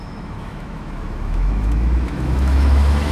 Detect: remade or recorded remade